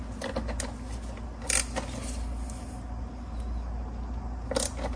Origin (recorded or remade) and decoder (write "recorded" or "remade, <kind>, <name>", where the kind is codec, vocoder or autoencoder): recorded